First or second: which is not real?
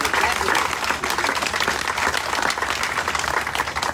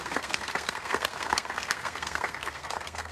second